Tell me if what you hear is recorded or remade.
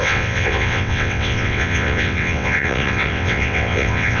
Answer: remade